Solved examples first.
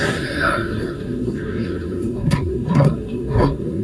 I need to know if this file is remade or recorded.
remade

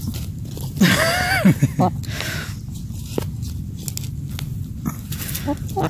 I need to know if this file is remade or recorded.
recorded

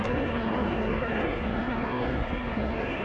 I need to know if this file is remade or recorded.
remade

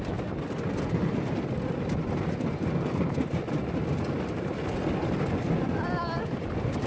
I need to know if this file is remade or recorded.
recorded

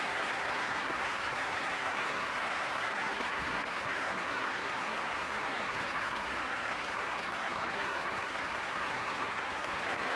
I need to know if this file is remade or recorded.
remade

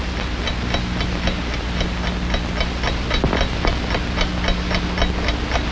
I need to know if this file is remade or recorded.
recorded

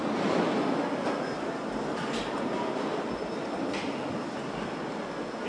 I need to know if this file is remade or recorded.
recorded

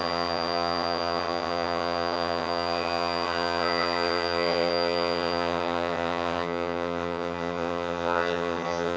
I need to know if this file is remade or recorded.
remade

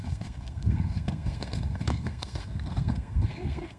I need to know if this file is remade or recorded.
remade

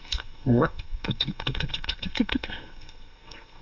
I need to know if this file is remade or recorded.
remade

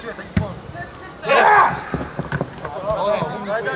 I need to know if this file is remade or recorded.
recorded